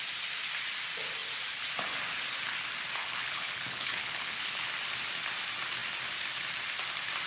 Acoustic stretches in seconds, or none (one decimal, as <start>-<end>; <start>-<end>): 0.0-3.0; 4.7-7.3